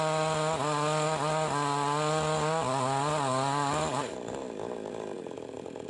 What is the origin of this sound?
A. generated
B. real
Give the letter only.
B